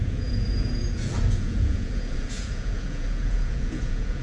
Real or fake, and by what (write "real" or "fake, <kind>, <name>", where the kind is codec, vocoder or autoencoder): fake, vocoder, Vocos